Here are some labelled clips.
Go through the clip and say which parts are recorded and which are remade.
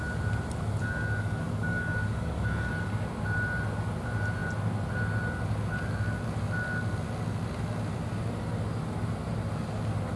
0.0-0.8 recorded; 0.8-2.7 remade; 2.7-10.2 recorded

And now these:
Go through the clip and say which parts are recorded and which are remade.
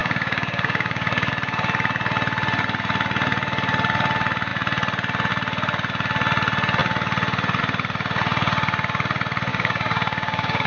0.0-1.3 remade; 1.3-9.5 recorded; 9.5-10.7 remade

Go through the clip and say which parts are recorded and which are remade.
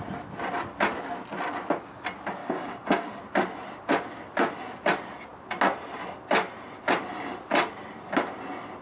0.0-2.4 recorded; 2.4-3.2 remade; 3.2-8.8 recorded